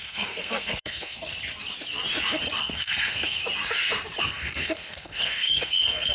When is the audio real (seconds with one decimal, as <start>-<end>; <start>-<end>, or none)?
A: 1.3-2.6; 3.4-4.2